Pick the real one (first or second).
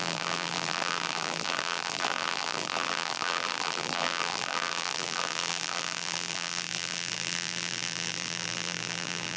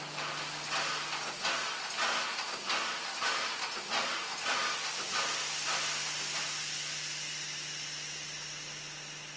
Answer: second